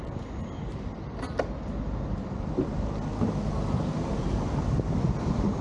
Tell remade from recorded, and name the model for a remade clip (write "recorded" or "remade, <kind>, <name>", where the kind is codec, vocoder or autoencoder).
recorded